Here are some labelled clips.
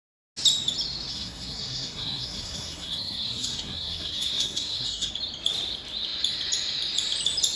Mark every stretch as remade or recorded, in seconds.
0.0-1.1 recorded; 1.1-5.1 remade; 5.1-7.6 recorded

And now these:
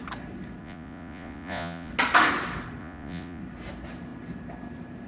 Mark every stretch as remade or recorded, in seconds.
0.0-0.6 recorded; 0.6-1.9 remade; 1.9-2.8 recorded; 2.8-3.4 remade; 3.4-5.1 recorded

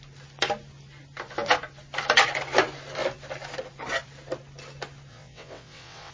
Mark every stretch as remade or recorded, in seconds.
0.0-5.1 recorded; 5.1-6.1 remade

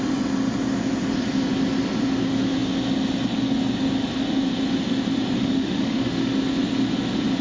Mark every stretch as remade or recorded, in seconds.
0.0-5.4 recorded; 5.4-6.3 remade; 6.3-7.4 recorded